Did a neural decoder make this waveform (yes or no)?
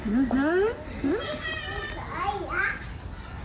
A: no